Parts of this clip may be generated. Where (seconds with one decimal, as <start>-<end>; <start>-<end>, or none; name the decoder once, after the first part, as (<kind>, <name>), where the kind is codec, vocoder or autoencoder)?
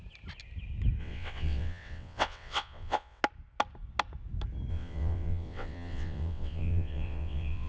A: 1.0-3.2 (vocoder, WaveNeXt); 4.7-7.7